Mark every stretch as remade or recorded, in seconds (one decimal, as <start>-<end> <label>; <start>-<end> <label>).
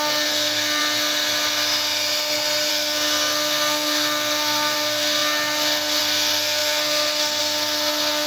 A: 0.0-0.8 remade; 0.8-2.7 recorded; 2.7-8.3 remade